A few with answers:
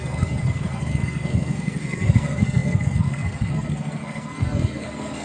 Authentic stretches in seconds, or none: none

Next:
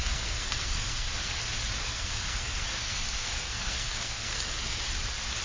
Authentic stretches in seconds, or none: 1.4-1.8; 4.8-5.4

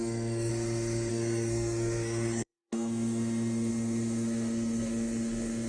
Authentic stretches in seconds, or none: 0.5-1.1

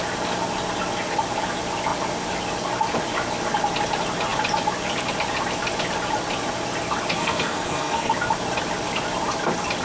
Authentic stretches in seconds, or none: 0.0-7.2; 8.1-9.8

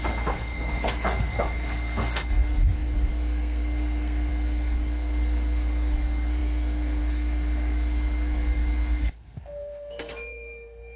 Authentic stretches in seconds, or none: none

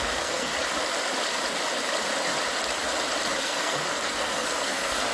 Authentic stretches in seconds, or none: 0.5-3.4

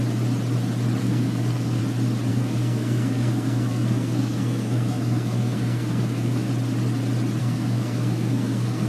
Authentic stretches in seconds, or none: 0.0-1.0; 1.8-2.3; 6.5-7.4